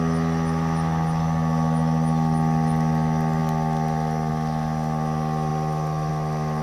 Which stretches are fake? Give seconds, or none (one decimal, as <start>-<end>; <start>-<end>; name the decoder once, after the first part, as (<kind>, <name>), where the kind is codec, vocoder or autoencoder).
none